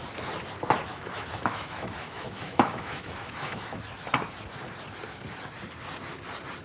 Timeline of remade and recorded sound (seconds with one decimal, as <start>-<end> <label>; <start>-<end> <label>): 0.0-0.9 recorded; 0.9-3.8 remade; 3.8-6.6 recorded